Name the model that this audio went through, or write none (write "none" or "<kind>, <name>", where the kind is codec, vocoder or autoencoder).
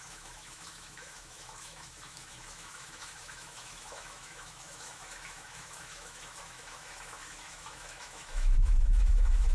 autoencoder, DAC-VAE